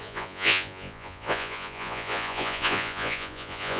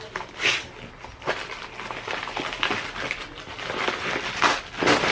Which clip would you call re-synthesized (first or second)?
first